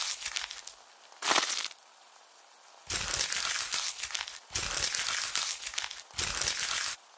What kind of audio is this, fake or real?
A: real